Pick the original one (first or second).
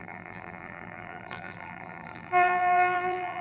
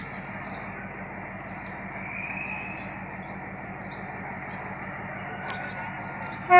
second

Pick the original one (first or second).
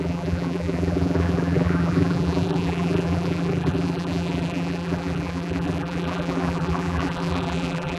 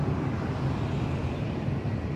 second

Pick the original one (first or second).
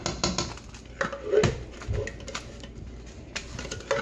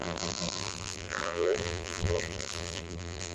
first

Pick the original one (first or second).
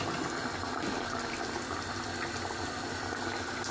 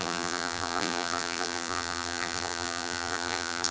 first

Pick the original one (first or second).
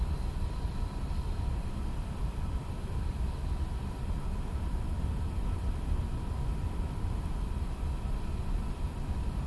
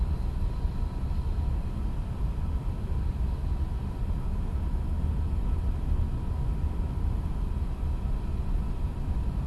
second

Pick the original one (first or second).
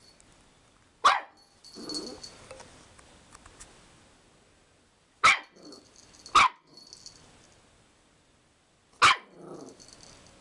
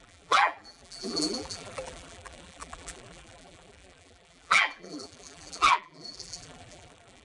first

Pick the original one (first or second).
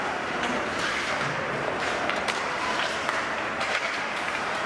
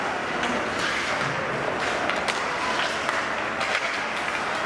second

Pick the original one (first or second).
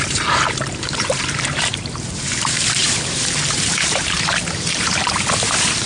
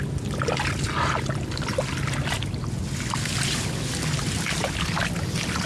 second